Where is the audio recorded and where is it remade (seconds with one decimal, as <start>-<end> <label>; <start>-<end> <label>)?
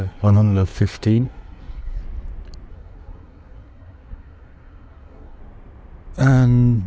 0.0-2.0 remade; 2.0-2.7 recorded; 2.7-5.4 remade; 5.4-6.9 recorded